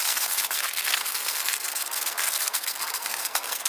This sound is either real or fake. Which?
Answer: fake